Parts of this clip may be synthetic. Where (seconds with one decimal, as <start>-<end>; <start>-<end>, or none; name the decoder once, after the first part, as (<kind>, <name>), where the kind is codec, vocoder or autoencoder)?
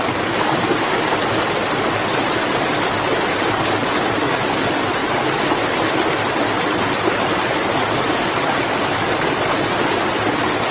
none